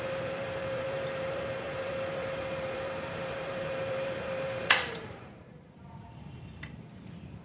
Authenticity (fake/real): fake